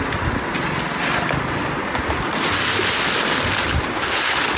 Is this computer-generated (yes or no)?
no